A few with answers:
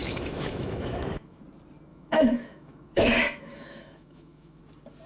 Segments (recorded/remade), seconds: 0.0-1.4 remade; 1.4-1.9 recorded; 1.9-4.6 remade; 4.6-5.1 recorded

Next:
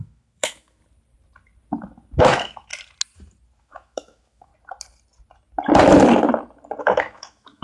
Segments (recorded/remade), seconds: 0.0-0.8 remade; 0.8-2.2 recorded; 2.2-2.7 remade; 2.7-3.6 recorded; 3.6-4.5 remade; 4.5-6.8 recorded; 6.8-7.6 remade

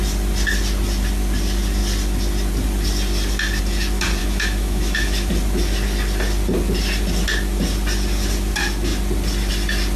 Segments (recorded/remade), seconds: 0.0-4.2 recorded; 4.2-5.3 remade; 5.3-10.0 recorded

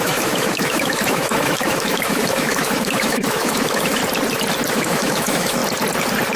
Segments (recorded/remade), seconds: 0.0-4.0 remade; 4.0-4.7 recorded; 4.7-5.6 remade; 5.6-6.4 recorded